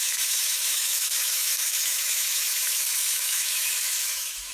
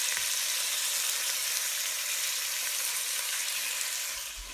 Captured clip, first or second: second